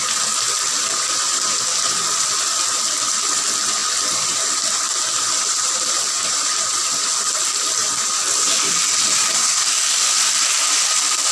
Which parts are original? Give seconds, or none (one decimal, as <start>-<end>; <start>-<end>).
0.0-11.3

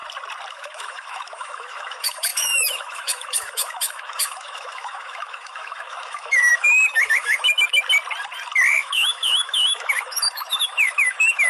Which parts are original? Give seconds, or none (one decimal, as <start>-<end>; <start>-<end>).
0.0-0.5; 7.7-8.7